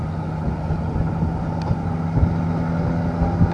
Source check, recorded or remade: recorded